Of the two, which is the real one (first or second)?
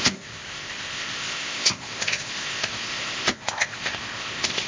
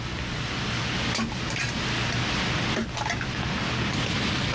second